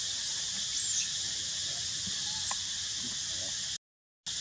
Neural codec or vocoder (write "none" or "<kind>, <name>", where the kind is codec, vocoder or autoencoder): none